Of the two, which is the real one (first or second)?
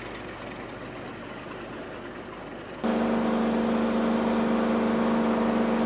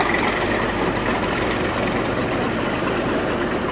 first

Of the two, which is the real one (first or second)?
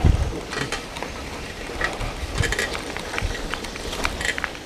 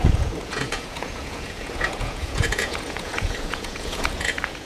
first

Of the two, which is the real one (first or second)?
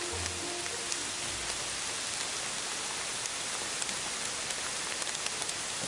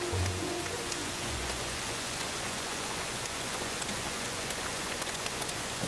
first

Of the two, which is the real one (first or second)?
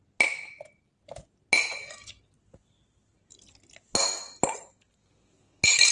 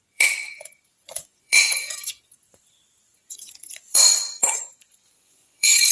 first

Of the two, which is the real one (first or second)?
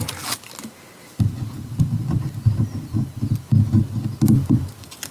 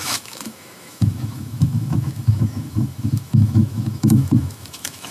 first